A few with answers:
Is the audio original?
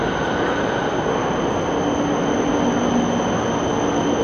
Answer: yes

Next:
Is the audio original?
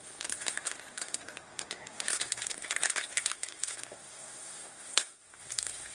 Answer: no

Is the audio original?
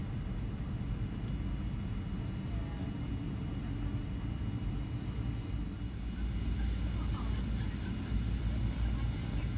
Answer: yes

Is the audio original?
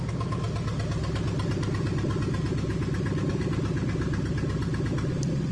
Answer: yes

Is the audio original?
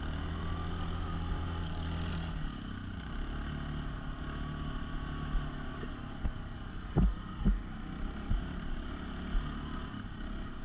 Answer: yes